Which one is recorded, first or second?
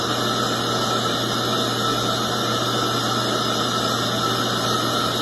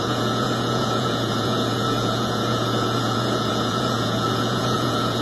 first